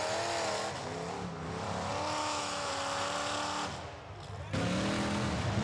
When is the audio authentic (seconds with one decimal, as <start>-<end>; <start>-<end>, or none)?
0.0-2.2; 2.7-5.6